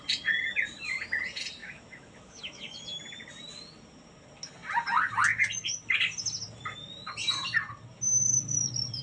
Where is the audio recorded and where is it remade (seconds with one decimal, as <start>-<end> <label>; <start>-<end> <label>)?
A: 0.0-1.6 recorded; 1.6-3.0 remade; 3.0-9.0 recorded